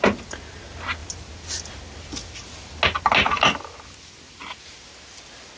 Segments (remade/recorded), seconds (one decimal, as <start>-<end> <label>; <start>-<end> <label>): 0.0-5.6 recorded